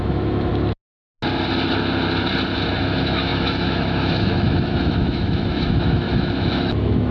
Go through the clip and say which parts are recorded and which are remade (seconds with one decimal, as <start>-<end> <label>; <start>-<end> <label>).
0.0-0.5 remade; 0.5-2.8 recorded; 2.8-7.1 remade